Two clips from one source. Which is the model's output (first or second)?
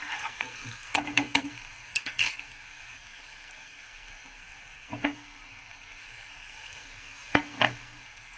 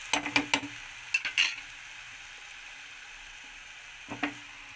first